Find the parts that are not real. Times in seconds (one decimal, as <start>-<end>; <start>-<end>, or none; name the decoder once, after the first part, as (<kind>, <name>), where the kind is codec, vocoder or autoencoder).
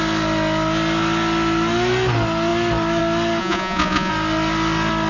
3.4-4.1 (vocoder, Vocos)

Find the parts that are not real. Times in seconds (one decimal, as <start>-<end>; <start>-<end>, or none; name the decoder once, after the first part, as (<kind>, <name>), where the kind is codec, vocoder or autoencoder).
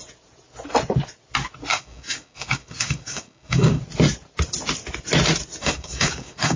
1.7-3.8 (codec, DAC); 5.6-6.6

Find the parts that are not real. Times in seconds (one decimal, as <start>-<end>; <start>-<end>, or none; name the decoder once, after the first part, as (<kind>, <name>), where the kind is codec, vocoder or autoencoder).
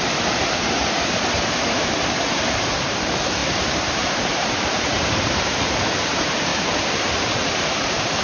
0.0-8.2 (vocoder, BigVGAN v2)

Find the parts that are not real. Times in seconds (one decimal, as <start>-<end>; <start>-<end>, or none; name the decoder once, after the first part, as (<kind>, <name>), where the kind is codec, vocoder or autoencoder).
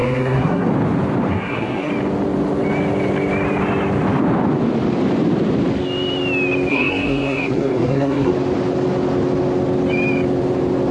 0.0-0.7 (codec, SNAC); 1.3-1.9; 6.7-8.3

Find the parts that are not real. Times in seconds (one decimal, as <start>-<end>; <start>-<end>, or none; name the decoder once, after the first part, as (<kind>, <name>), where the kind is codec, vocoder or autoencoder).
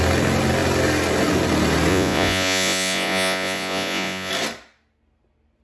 1.9-4.3 (vocoder, Vocos)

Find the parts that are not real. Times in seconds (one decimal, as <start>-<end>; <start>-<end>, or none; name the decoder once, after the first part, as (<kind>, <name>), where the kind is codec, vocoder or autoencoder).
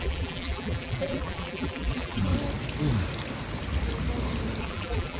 0.0-2.3 (vocoder, BigVGAN v2); 4.6-5.2